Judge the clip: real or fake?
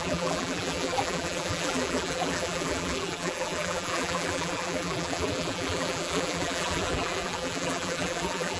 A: fake